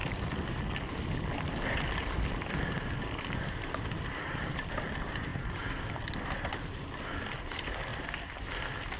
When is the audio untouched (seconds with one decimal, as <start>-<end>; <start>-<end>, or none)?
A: 0.0-3.0; 5.3-6.4; 7.9-9.0